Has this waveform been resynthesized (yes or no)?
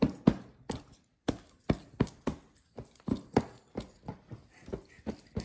no